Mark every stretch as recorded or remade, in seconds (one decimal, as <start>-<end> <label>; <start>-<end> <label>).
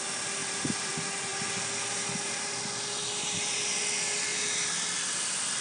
0.0-0.4 recorded; 0.4-0.9 remade; 0.9-5.6 recorded